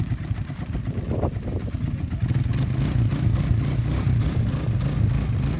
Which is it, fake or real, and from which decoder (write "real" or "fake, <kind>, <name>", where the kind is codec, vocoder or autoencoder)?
real